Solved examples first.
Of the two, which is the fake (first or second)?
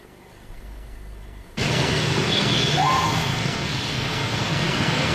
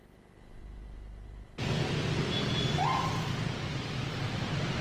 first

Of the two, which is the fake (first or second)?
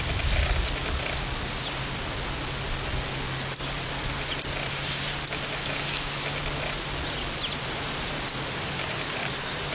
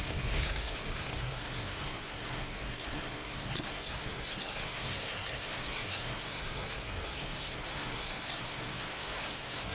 second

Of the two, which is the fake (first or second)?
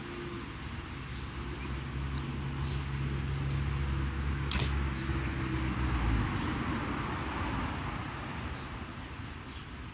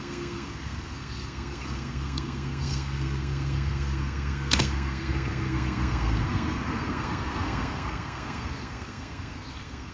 second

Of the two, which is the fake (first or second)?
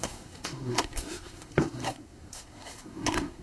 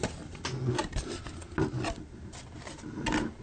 first